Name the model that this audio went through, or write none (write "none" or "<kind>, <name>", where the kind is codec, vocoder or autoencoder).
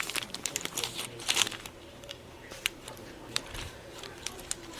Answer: vocoder, BigVGAN v2